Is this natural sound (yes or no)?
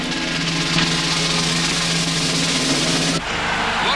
yes